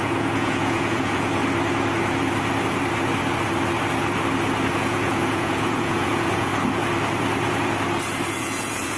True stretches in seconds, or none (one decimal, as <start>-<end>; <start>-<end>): 1.4-4.7; 6.5-8.3

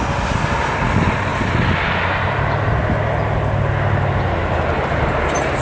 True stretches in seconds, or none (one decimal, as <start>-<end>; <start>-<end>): 0.0-5.6